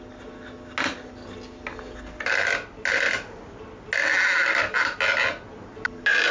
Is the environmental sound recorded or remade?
recorded